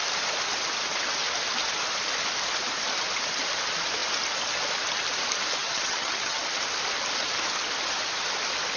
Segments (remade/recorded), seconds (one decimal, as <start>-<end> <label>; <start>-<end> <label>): 0.0-5.6 recorded; 5.6-6.4 remade; 6.4-8.8 recorded